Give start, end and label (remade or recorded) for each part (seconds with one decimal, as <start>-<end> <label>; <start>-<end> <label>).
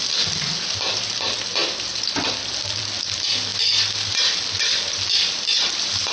0.0-6.1 recorded